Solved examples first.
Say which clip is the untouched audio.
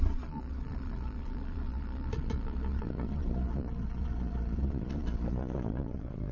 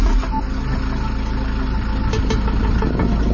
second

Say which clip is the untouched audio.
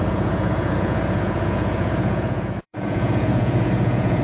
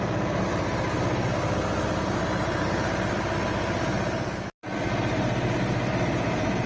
second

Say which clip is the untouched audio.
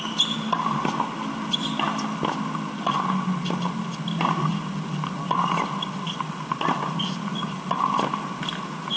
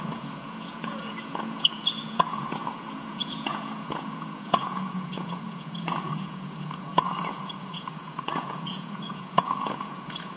first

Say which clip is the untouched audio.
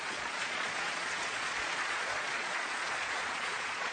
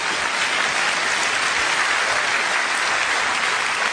second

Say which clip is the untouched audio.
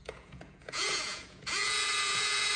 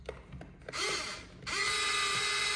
second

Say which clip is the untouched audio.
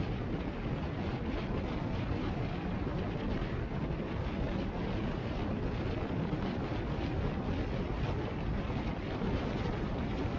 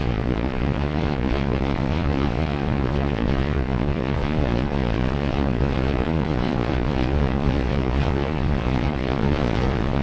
first